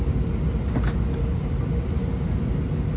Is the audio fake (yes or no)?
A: no